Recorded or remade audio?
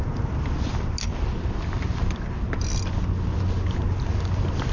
recorded